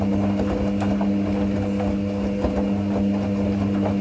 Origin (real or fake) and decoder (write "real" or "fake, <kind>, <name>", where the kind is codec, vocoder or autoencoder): real